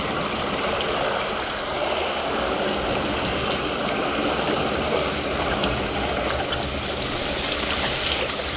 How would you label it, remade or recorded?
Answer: recorded